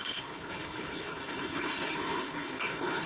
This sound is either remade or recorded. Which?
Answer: remade